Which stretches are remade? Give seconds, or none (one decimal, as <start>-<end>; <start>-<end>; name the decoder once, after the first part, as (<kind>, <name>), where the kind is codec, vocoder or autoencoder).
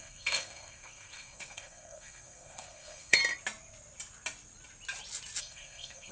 0.0-3.2 (codec, SNAC); 5.4-6.1